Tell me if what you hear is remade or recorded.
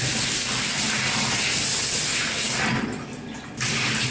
recorded